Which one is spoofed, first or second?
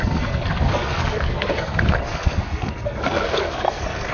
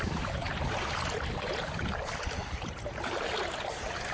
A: first